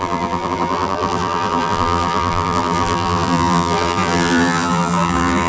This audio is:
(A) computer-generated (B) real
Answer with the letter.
A